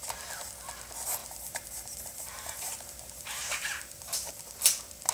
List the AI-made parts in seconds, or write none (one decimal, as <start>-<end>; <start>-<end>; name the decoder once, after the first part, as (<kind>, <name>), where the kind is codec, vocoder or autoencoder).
1.2-4.3 (vocoder, BigVGAN v2)